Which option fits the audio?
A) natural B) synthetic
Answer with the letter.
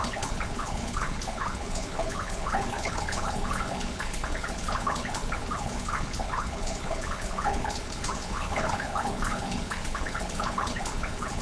B